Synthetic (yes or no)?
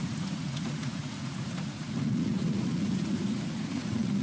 yes